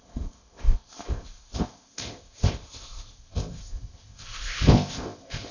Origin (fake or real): fake